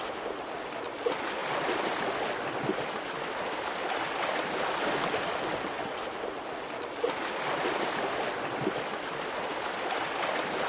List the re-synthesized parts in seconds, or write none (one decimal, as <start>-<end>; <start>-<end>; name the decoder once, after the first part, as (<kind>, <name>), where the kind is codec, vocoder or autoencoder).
none